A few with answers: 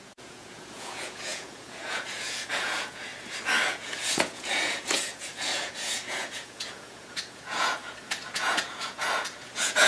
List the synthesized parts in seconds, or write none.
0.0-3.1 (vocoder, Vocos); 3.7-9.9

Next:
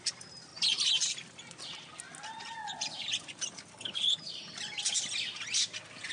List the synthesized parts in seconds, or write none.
3.7-4.2 (codec, HILCodec)

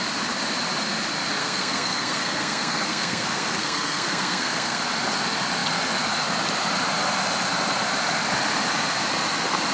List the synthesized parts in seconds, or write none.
1.4-4.8 (codec, SNAC)

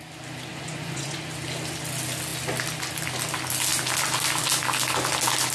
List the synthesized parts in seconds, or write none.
0.5-1.2 (vocoder, Vocos)